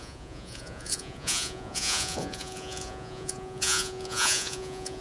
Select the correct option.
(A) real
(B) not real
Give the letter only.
B